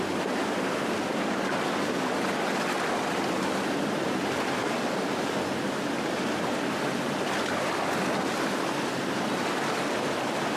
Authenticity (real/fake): real